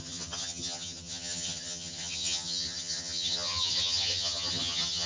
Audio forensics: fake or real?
fake